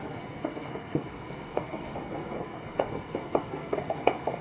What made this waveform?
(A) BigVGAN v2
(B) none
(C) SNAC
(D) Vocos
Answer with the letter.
C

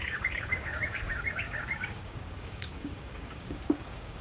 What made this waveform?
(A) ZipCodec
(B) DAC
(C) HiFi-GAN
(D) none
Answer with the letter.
B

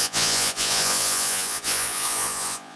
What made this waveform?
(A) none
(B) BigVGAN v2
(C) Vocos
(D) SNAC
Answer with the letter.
C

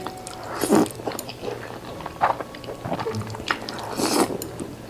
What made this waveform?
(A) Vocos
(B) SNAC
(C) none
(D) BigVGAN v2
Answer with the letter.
D